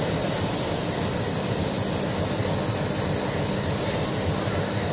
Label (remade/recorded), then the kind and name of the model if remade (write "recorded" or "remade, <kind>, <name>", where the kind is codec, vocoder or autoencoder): recorded